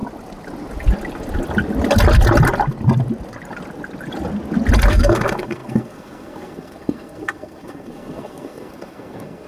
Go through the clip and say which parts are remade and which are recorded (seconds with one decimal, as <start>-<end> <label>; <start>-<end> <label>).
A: 0.0-4.9 recorded; 4.9-9.5 remade